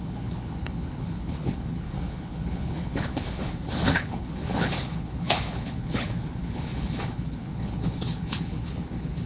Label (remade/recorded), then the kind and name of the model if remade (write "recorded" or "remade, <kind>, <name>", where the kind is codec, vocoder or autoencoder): remade, codec, HILCodec